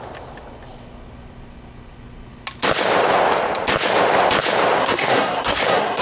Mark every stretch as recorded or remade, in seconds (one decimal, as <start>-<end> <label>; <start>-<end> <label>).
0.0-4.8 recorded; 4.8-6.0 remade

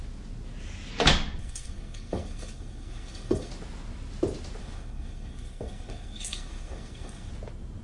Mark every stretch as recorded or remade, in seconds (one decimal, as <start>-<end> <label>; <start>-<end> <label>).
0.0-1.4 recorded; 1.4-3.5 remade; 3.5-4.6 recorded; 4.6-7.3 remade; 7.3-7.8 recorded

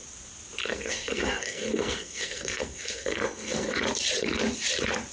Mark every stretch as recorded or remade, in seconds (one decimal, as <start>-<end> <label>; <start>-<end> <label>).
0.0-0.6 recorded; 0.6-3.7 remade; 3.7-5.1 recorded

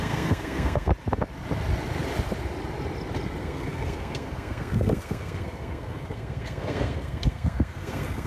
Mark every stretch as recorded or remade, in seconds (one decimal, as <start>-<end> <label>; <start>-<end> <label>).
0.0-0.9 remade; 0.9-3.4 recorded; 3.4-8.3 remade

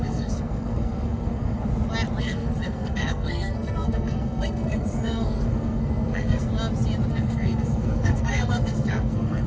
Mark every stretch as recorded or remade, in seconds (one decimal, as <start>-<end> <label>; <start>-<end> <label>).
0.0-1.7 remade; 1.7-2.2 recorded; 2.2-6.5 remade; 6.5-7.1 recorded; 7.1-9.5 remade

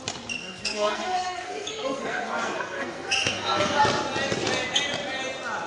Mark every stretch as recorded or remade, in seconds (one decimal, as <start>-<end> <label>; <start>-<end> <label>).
0.0-0.4 recorded; 0.4-3.8 remade; 3.8-5.7 recorded

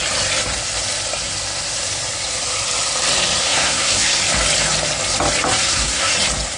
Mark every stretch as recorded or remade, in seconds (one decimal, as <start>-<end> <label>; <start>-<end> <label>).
0.0-3.4 recorded; 3.4-4.2 remade; 4.2-5.6 recorded; 5.6-6.1 remade; 6.1-6.6 recorded